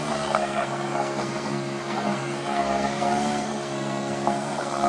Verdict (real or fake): fake